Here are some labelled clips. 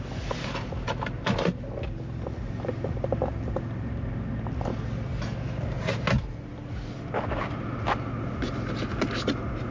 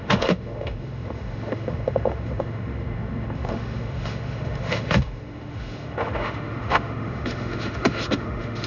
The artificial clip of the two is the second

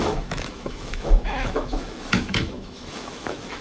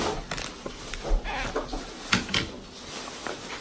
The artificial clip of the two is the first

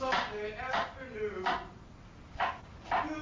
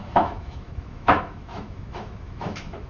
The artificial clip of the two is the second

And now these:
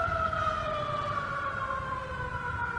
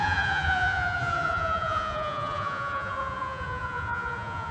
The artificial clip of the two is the second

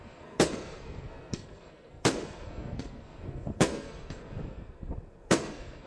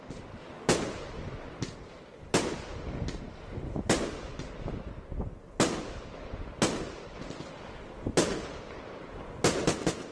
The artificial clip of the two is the first